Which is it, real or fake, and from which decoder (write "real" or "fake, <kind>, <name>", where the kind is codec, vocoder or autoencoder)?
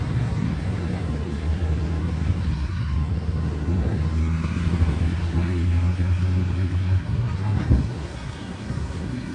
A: fake, codec, SNAC